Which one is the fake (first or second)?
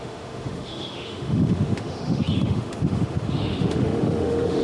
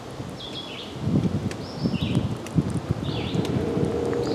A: first